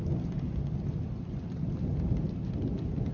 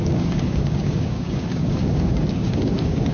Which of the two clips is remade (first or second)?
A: second